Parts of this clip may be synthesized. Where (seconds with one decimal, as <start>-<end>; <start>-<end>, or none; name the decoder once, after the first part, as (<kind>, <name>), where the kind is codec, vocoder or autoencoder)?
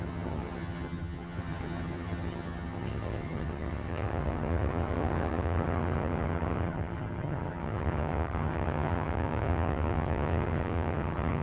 0.0-11.4 (vocoder, HiFi-GAN)